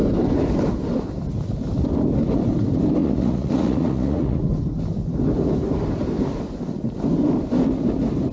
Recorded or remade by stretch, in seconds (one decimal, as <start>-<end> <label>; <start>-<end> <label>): 0.0-3.0 recorded; 3.0-4.4 remade; 4.4-8.3 recorded